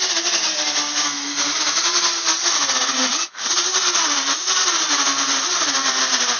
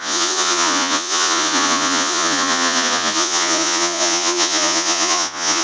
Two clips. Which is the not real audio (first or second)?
second